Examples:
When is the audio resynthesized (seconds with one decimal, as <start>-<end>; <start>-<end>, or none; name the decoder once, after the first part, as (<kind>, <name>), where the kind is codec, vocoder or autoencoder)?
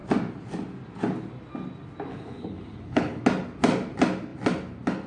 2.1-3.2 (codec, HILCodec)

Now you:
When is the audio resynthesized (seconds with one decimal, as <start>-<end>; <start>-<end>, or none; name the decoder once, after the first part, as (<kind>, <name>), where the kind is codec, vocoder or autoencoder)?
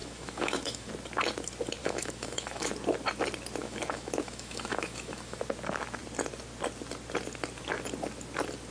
0.0-0.9 (autoencoder, DAC-VAE); 1.8-2.7; 3.6-5.4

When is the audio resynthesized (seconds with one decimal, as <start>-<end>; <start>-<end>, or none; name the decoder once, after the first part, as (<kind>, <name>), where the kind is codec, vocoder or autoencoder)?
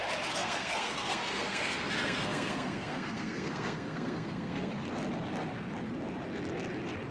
0.4-4.7 (codec, SNAC)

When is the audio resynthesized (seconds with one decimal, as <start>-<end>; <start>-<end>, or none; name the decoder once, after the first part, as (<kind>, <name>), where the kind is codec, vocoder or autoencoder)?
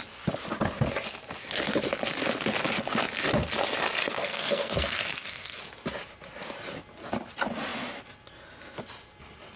4.0-5.6 (codec, SNAC)